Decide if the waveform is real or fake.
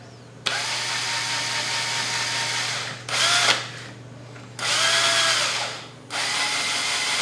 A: real